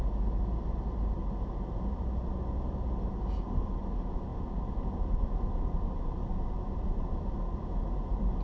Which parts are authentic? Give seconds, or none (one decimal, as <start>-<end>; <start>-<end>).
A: 0.0-8.4